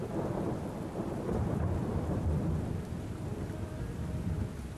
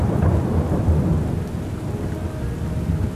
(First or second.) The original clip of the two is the second